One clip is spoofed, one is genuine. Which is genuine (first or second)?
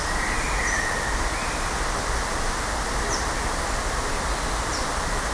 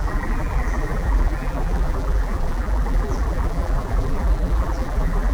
first